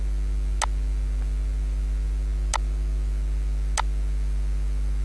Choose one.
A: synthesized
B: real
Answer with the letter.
B